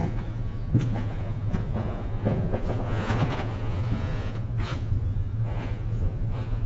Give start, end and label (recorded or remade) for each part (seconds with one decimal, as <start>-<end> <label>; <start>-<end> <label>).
0.0-6.7 remade